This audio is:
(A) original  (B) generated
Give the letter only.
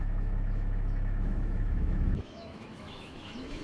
B